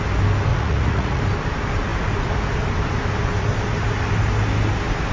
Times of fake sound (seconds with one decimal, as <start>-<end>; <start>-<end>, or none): 0.5-1.2